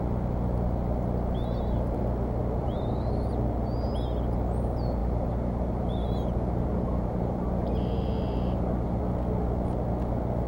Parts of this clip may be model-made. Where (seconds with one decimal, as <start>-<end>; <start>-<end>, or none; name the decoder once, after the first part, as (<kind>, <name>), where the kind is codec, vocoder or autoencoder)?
2.6-3.3 (vocoder, BigVGAN v2); 5.0-9.0